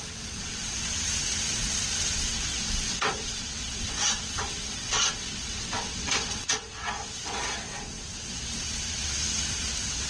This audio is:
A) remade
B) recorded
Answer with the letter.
A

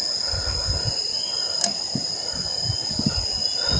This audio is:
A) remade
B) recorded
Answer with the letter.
B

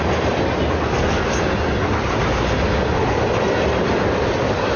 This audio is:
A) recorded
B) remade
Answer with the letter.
A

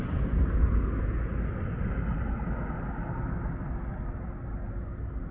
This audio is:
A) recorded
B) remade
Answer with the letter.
A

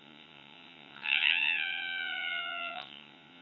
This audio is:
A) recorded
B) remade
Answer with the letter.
B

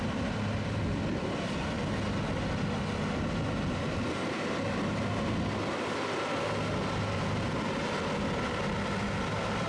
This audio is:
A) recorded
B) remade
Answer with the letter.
A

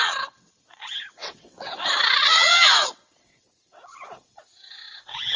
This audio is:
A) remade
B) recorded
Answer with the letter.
A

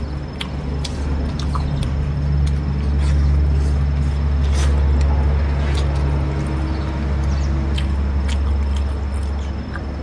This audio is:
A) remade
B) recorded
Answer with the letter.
B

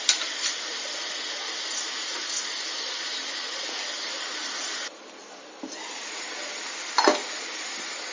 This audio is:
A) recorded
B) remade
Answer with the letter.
A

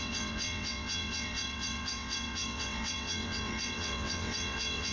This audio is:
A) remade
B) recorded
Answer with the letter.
A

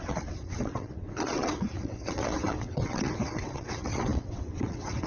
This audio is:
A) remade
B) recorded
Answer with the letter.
A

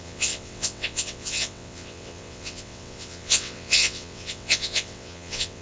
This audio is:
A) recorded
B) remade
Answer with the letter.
B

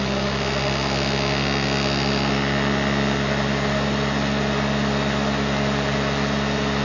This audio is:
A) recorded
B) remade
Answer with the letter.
A